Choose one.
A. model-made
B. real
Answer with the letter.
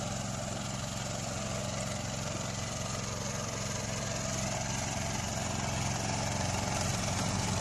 B